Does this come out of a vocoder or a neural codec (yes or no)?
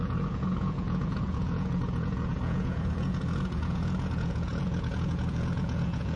yes